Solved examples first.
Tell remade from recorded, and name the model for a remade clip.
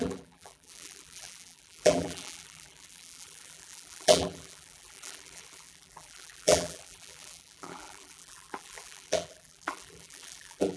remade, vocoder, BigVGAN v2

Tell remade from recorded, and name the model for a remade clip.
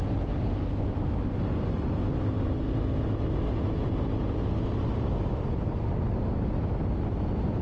recorded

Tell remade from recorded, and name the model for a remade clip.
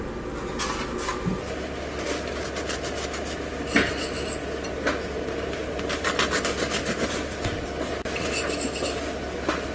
recorded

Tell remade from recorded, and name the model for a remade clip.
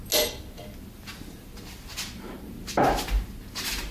recorded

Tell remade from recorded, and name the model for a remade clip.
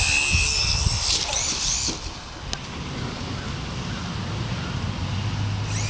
recorded